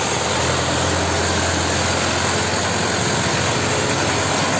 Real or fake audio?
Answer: real